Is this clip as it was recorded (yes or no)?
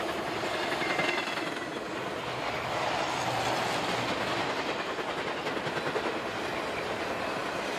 yes